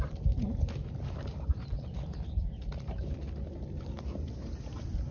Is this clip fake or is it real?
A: real